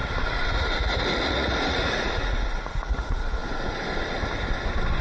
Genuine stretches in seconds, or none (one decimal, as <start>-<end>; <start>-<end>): 3.4-5.0